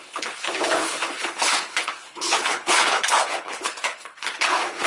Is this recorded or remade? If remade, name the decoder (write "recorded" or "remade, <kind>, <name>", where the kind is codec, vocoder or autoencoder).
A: remade, codec, HILCodec